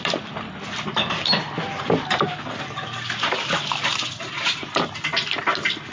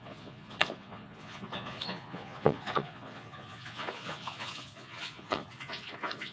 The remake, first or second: second